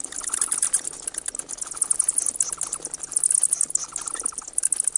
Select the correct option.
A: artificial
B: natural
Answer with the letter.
B